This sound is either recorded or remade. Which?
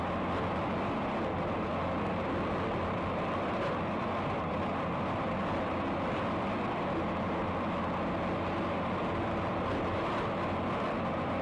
recorded